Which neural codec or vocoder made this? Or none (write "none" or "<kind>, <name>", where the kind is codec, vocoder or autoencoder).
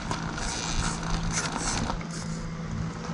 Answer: none